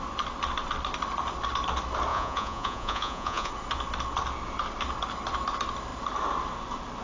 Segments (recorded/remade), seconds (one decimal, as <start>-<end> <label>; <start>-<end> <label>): 0.0-2.1 recorded; 2.1-3.5 remade; 3.5-7.0 recorded